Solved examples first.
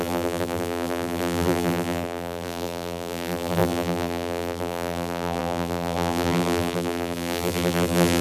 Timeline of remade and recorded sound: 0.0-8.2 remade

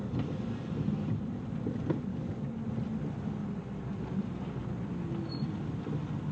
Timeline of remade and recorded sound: 0.0-2.1 recorded; 2.1-2.6 remade; 2.6-6.3 recorded

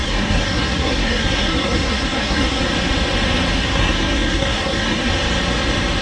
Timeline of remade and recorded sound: 0.0-2.6 remade; 2.6-3.6 recorded; 3.6-5.1 remade; 5.1-6.0 recorded

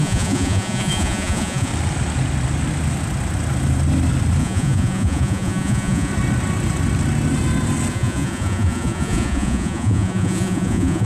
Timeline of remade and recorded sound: 0.0-1.7 remade; 1.7-4.4 recorded; 4.4-6.1 remade; 6.1-7.9 recorded; 7.9-11.1 remade